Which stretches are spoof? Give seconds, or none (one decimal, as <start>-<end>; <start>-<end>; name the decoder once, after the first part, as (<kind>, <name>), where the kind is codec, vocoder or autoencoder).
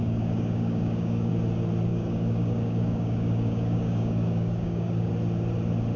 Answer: 0.0-1.3 (codec, DAC); 1.9-5.1